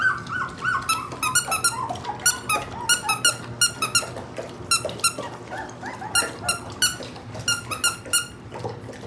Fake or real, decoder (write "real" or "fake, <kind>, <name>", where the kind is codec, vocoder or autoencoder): real